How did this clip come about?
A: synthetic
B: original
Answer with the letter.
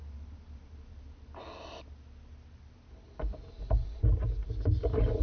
B